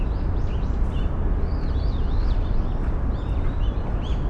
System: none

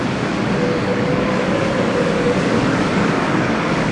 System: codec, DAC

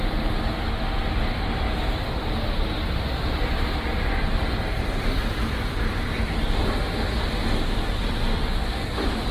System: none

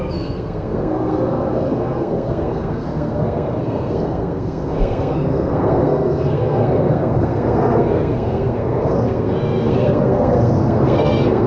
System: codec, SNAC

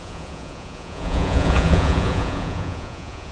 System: vocoder, Vocos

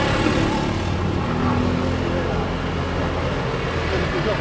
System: none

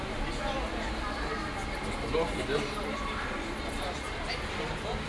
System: none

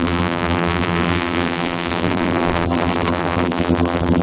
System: vocoder, BigVGAN v2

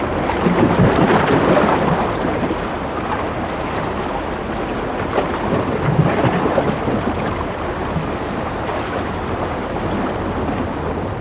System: none